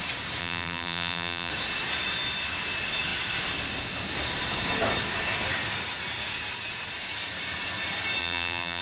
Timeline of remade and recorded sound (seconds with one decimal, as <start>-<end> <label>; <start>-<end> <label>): 0.0-0.4 recorded; 0.4-1.5 remade; 1.5-8.2 recorded; 8.2-8.8 remade